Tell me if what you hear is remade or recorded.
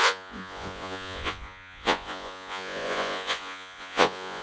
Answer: remade